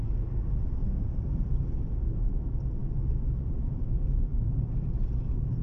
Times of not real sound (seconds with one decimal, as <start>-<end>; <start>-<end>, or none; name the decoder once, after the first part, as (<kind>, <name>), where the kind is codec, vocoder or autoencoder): 0.8-1.8 (vocoder, BigVGAN v2); 2.8-3.9